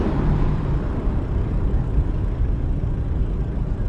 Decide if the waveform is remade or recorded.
remade